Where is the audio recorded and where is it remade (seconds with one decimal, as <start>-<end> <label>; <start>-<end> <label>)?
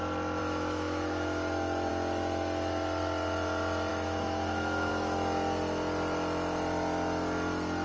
0.0-0.4 recorded; 0.4-1.9 remade; 1.9-3.9 recorded; 3.9-4.9 remade; 4.9-7.8 recorded